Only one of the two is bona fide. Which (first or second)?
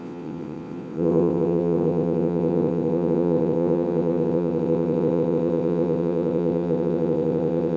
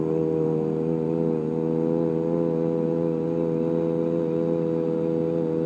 second